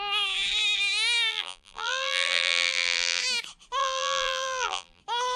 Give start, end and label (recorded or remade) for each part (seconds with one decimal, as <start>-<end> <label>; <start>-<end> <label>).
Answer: 0.0-1.3 recorded; 1.3-3.2 remade; 3.2-3.8 recorded; 3.8-5.0 remade; 5.0-5.4 recorded